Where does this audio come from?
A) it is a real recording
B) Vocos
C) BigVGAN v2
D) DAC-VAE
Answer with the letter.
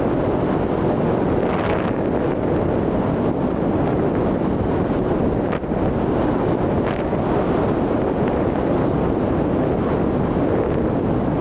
A